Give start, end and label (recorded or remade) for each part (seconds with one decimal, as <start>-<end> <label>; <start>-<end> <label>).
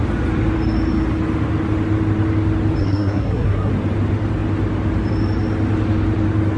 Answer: 0.0-2.8 recorded; 2.8-3.7 remade; 3.7-6.6 recorded